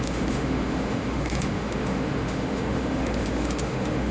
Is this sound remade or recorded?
remade